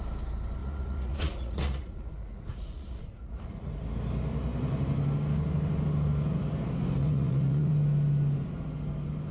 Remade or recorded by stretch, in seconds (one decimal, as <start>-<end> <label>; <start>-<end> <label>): 0.0-0.6 recorded; 0.6-3.7 remade; 3.7-7.0 recorded; 7.0-7.7 remade; 7.7-9.3 recorded